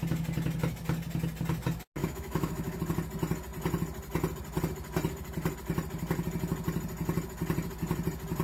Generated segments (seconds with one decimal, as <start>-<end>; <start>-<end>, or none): 2.0-2.8